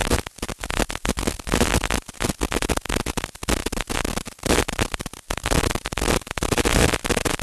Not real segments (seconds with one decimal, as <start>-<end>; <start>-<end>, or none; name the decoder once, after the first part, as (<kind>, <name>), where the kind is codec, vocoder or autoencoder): none